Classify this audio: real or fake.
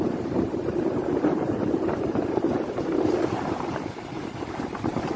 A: fake